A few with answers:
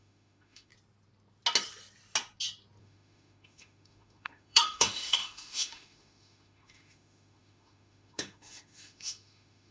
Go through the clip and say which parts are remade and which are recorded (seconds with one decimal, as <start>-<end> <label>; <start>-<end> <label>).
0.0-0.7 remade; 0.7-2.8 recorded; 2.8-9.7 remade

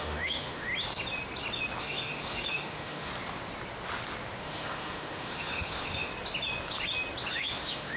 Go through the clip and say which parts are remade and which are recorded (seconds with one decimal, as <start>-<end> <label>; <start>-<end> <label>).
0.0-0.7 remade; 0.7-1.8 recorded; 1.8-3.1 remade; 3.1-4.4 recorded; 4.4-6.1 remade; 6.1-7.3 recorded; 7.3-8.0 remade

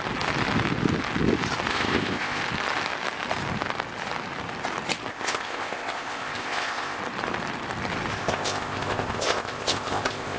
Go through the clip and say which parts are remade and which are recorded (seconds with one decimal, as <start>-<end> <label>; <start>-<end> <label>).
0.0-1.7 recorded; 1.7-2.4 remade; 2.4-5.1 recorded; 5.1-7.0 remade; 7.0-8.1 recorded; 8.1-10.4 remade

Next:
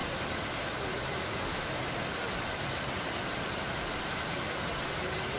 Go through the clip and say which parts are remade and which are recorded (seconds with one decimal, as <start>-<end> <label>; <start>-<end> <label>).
0.0-5.4 recorded

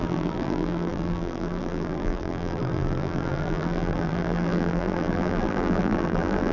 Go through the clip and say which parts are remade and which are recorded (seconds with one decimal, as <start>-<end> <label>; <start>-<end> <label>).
0.0-6.5 remade

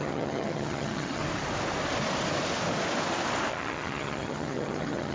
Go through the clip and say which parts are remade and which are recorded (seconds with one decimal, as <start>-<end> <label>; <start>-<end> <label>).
0.0-1.2 remade; 1.2-3.5 recorded; 3.5-5.1 remade

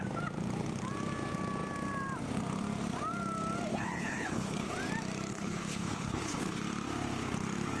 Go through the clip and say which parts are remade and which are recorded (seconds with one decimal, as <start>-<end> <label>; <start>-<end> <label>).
0.0-3.7 recorded; 3.7-4.7 remade; 4.7-5.3 recorded; 5.3-6.6 remade; 6.6-7.8 recorded